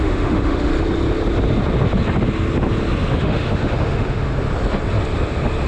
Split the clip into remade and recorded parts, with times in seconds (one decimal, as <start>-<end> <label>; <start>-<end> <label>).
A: 0.0-0.7 remade; 0.7-3.2 recorded; 3.2-4.3 remade; 4.3-5.7 recorded

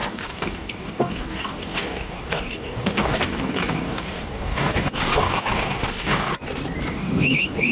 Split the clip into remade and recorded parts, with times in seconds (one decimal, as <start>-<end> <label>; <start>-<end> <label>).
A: 0.0-6.3 remade; 6.3-6.9 recorded; 6.9-7.7 remade

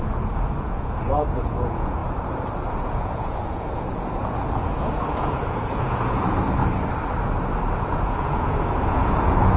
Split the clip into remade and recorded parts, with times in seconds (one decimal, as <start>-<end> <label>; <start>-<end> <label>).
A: 0.0-2.0 remade; 2.0-2.8 recorded; 2.8-6.6 remade; 6.6-7.8 recorded; 7.8-9.6 remade

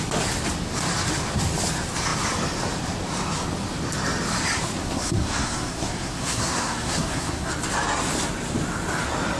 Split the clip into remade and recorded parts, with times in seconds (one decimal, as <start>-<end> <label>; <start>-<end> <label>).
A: 0.0-4.8 recorded; 4.8-7.5 remade; 7.5-9.4 recorded

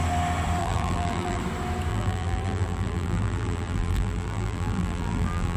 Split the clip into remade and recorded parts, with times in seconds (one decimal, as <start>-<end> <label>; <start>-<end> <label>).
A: 0.0-0.6 recorded; 0.6-1.4 remade; 1.4-1.9 recorded; 1.9-5.6 remade

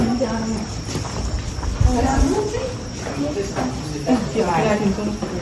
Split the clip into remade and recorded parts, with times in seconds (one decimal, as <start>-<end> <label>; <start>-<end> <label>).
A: 0.0-1.9 recorded; 1.9-3.7 remade; 3.7-5.4 recorded

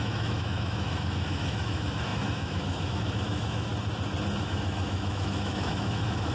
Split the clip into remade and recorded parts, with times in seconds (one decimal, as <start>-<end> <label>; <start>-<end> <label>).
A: 0.0-3.7 remade; 3.7-4.4 recorded; 4.4-6.3 remade